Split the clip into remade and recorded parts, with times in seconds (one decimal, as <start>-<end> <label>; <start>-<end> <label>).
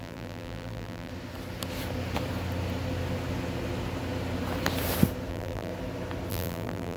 0.0-1.1 remade; 1.1-5.3 recorded; 5.3-5.7 remade; 5.7-6.3 recorded; 6.3-7.0 remade